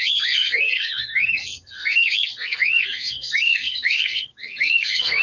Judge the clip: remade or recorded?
remade